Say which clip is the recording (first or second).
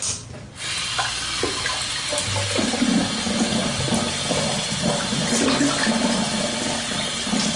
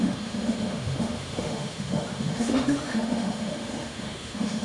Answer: first